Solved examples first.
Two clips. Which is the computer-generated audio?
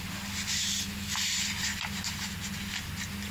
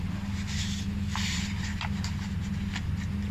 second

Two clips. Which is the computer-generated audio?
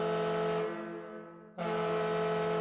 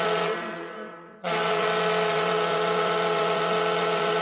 second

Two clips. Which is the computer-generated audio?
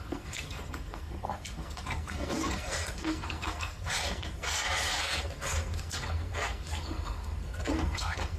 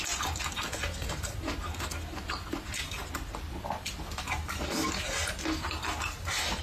first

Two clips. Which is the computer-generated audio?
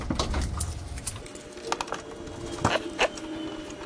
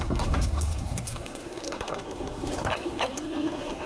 second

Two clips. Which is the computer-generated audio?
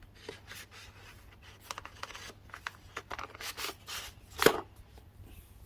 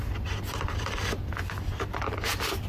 second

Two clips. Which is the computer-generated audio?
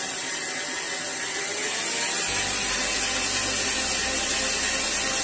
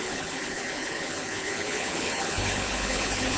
second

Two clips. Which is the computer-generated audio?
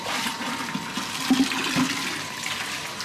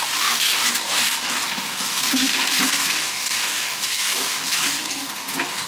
second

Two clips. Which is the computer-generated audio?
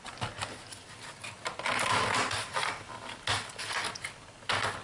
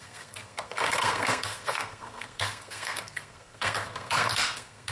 second